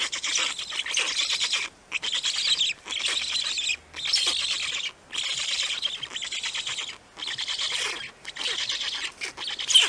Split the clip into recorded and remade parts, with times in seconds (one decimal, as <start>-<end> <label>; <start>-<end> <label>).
0.0-9.9 recorded